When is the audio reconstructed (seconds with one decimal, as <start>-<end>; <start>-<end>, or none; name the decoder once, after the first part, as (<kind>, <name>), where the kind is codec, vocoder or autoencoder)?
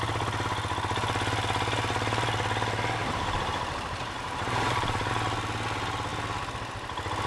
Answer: 3.0-5.1 (vocoder, BigVGAN v2)